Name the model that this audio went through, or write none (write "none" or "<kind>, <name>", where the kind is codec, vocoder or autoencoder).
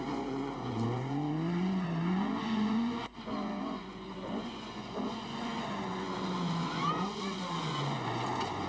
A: vocoder, Vocos